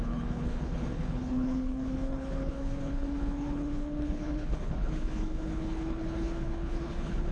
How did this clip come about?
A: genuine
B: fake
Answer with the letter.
B